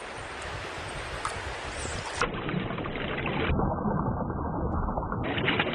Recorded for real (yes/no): yes